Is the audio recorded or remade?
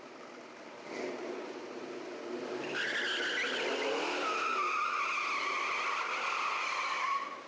recorded